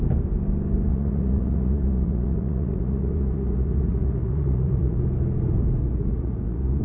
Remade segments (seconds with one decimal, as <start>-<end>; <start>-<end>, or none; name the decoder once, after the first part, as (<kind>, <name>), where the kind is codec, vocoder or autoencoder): 0.9-5.0 (vocoder, Vocos); 5.8-6.8